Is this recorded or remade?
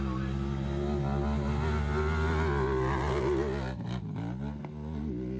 recorded